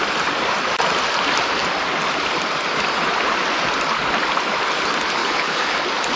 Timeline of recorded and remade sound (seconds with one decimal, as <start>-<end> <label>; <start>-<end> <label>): 0.0-5.2 recorded; 5.2-5.8 remade; 5.8-6.2 recorded

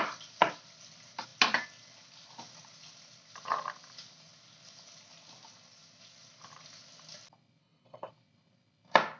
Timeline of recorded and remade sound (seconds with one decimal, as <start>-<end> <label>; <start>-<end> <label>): 0.0-7.6 recorded; 7.6-8.1 remade; 8.1-9.2 recorded

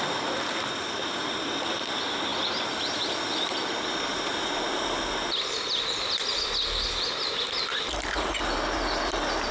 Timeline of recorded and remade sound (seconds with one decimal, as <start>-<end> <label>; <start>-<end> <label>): 0.0-9.5 recorded

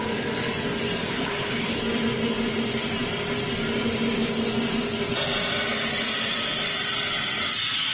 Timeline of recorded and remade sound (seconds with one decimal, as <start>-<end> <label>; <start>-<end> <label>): 0.0-1.0 recorded; 1.0-1.8 remade; 1.8-7.9 recorded

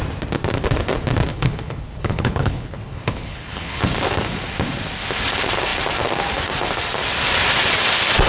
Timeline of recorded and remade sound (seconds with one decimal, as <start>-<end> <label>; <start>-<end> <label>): 0.0-1.3 recorded; 1.3-3.8 remade; 3.8-8.3 recorded